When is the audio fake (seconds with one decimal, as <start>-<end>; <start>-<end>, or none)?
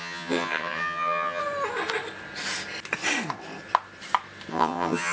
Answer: 0.0-1.4; 4.5-5.1